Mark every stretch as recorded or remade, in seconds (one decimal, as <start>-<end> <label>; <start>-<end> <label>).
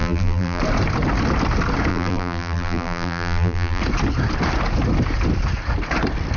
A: 0.0-0.6 remade; 0.6-1.9 recorded; 1.9-3.8 remade; 3.8-6.4 recorded